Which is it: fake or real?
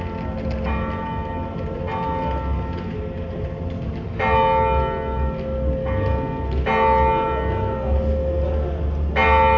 real